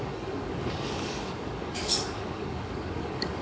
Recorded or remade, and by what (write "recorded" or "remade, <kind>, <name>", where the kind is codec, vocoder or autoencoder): remade, codec, DAC